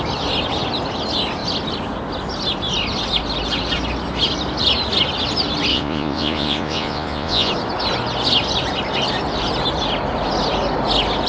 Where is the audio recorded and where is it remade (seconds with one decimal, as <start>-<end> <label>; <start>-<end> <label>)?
0.0-5.7 recorded; 5.7-7.5 remade; 7.5-11.3 recorded